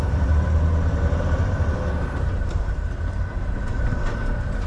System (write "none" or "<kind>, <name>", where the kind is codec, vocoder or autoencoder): vocoder, BigVGAN v2